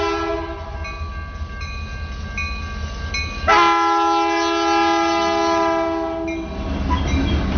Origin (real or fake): real